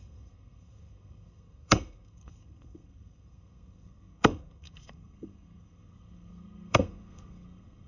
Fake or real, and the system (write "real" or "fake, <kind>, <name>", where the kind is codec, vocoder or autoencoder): fake, codec, SNAC